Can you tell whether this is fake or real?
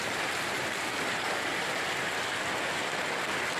real